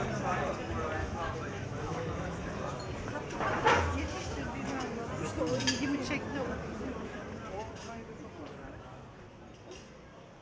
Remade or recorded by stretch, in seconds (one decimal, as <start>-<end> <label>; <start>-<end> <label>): 0.0-1.0 recorded; 1.0-2.5 remade; 2.5-10.4 recorded